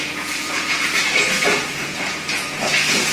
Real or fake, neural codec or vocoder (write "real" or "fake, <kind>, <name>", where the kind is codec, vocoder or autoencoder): fake, vocoder, Vocos